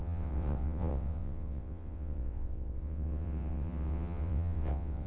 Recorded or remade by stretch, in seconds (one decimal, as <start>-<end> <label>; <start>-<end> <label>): 0.0-5.1 remade